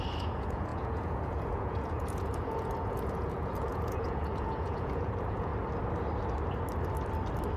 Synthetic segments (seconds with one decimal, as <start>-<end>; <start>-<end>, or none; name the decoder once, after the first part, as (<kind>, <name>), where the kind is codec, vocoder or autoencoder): 0.0-5.5 (vocoder, Vocos)